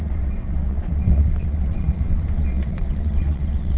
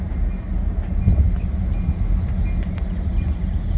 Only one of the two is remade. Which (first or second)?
first